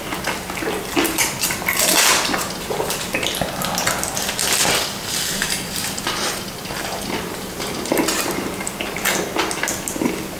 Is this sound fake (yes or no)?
no